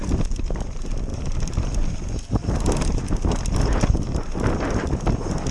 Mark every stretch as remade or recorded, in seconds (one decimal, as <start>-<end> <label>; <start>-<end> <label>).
0.0-5.5 recorded